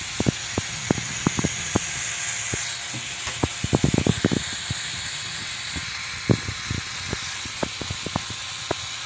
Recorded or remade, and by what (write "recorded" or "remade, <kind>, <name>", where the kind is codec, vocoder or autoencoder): recorded